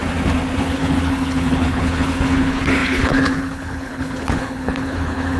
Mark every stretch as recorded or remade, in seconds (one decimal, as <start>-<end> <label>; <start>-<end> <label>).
0.0-0.6 recorded; 0.6-5.4 remade